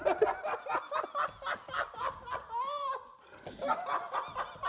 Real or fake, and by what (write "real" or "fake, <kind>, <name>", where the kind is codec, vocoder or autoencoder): real